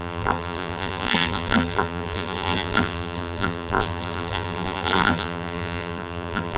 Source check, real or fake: fake